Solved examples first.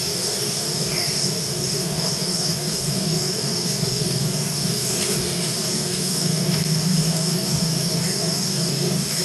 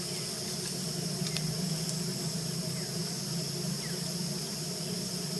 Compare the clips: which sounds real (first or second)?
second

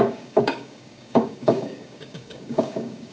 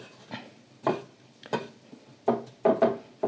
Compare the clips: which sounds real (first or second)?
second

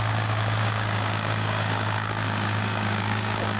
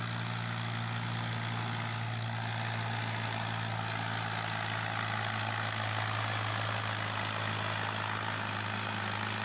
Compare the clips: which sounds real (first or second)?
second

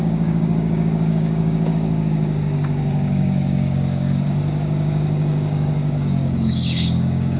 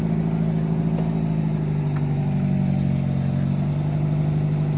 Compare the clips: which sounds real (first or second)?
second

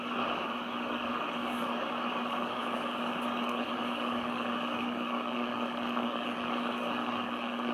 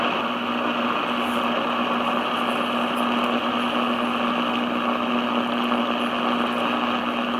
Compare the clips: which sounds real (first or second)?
second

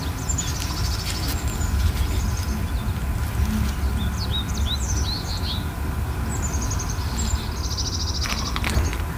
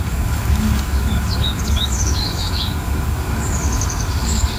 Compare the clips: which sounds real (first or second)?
first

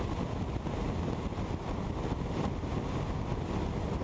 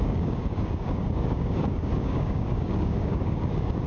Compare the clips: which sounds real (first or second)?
first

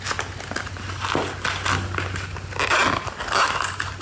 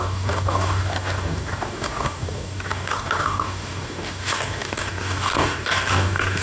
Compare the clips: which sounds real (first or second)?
first